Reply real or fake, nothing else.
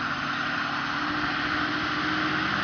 real